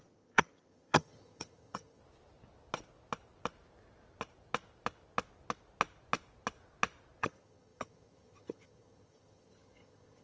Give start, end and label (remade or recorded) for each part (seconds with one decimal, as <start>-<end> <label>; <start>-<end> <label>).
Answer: 0.0-2.0 remade; 2.0-7.2 recorded; 7.2-10.2 remade

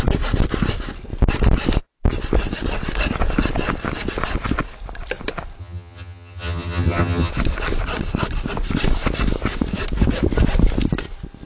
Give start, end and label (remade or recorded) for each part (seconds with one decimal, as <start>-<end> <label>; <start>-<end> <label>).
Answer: 0.0-5.6 recorded; 5.6-7.3 remade; 7.3-11.5 recorded